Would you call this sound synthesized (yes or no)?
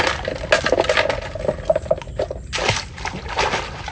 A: no